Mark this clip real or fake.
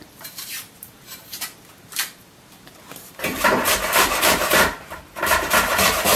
fake